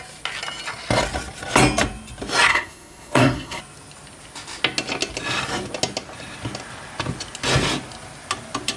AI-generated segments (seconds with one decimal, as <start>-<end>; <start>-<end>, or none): 2.5-3.6